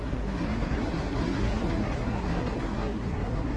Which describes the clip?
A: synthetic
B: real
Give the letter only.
A